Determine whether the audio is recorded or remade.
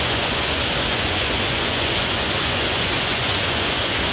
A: remade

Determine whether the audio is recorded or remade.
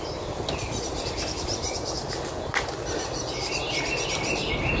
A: remade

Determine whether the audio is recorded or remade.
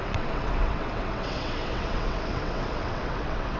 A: remade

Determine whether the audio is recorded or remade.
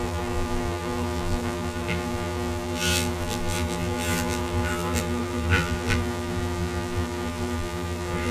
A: remade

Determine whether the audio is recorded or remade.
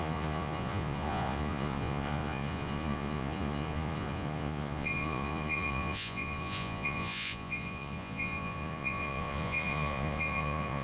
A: remade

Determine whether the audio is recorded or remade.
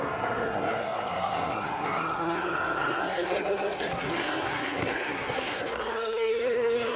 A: remade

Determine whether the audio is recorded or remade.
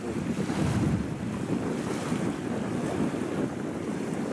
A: recorded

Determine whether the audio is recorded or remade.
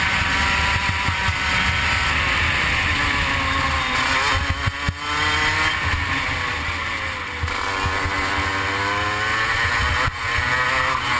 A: recorded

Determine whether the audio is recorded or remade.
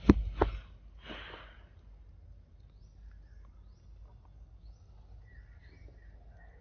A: recorded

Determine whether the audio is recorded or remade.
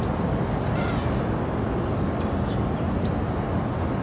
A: recorded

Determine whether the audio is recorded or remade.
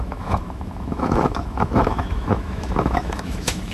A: remade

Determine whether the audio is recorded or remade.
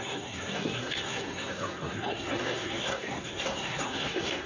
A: remade